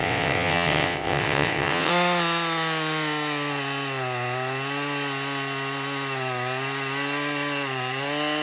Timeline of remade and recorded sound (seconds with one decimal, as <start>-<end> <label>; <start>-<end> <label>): 0.0-1.9 remade; 1.9-8.4 recorded